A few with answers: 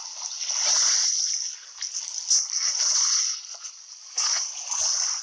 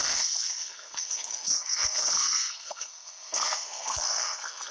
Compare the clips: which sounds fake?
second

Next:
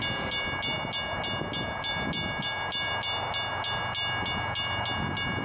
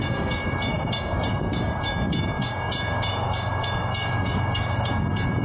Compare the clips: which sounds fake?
second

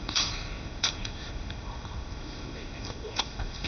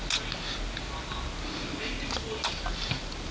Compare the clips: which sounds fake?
first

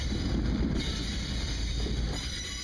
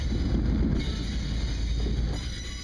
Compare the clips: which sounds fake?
first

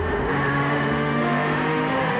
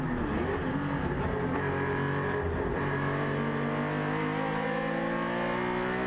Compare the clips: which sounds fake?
first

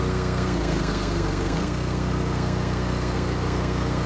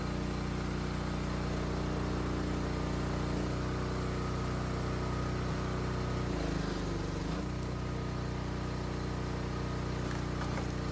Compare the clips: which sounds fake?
first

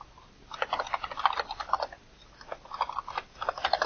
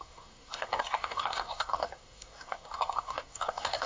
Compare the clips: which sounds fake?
second